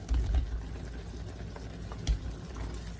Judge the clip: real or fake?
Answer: real